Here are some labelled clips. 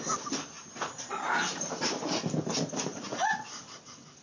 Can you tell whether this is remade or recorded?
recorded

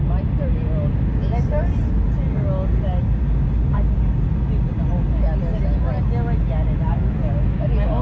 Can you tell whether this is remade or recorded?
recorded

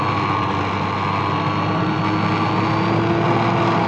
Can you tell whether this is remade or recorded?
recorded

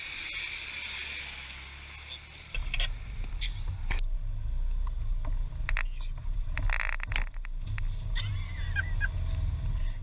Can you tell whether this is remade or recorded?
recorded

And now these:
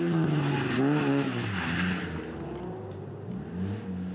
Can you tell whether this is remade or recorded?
recorded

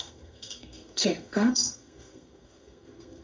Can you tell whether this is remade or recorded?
remade